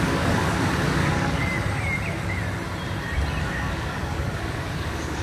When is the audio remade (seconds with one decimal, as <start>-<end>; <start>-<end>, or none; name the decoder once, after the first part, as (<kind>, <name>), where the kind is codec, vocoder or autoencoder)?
0.0-1.4 (codec, DAC); 3.4-5.2